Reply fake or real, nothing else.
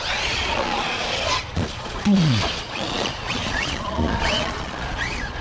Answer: fake